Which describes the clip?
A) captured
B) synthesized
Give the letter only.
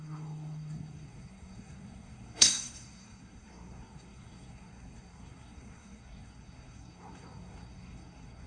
B